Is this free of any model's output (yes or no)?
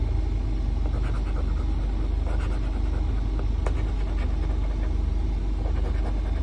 yes